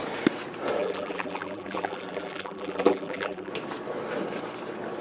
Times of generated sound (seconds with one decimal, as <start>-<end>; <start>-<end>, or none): 0.8-3.5